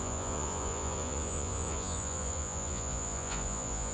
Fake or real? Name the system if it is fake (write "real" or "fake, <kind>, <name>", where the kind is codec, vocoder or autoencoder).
fake, vocoder, Vocos